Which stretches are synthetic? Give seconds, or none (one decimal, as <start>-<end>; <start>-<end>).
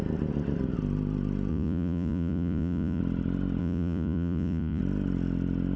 1.5-3.0; 3.6-4.8